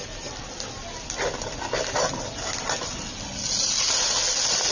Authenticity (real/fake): real